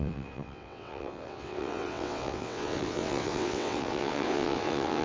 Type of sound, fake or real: fake